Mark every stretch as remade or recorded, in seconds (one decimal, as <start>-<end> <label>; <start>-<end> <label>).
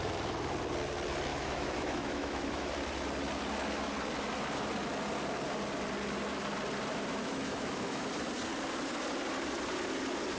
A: 0.0-1.3 recorded; 1.3-2.7 remade; 2.7-7.2 recorded; 7.2-8.0 remade; 8.0-10.4 recorded